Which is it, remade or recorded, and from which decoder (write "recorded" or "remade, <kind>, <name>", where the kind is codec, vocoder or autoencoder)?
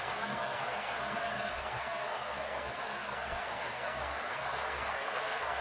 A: remade, codec, SNAC